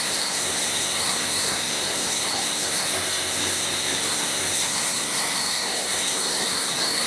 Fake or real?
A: fake